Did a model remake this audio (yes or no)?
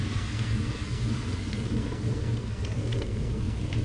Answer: yes